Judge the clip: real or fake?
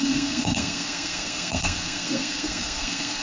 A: fake